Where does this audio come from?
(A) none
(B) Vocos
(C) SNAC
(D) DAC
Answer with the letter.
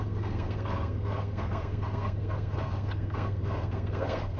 C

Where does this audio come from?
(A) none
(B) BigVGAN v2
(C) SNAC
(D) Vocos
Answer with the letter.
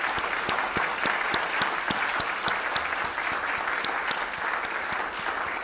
A